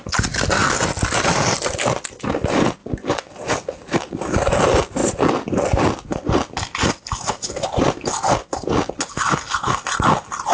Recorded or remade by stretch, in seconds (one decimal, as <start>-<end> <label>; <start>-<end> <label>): 0.0-10.5 recorded